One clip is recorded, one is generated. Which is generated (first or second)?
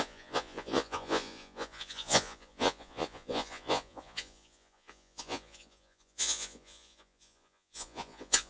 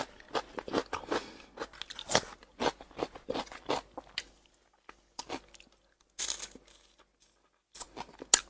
first